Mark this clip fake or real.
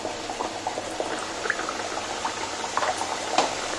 real